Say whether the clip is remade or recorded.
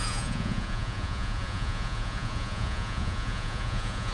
remade